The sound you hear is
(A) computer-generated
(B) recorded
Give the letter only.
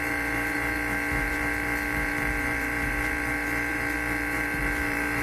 A